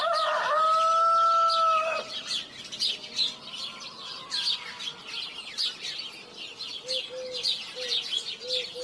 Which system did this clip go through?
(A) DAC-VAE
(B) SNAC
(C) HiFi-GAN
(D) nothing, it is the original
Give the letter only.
D